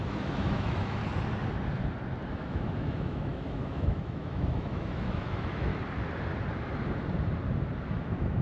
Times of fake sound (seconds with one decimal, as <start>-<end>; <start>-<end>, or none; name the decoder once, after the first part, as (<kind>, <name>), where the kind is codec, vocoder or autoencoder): 0.0-1.0 (autoencoder, DAC-VAE); 2.3-5.7; 7.9-8.4